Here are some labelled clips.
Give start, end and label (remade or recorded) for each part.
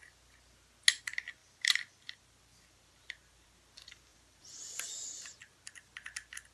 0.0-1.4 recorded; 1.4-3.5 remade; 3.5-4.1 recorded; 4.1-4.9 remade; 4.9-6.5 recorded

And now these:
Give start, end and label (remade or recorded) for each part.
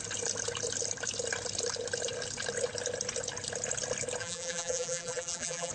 0.0-4.2 recorded; 4.2-5.7 remade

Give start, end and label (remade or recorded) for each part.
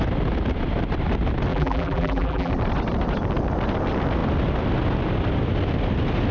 0.0-1.5 recorded; 1.5-2.5 remade; 2.5-6.3 recorded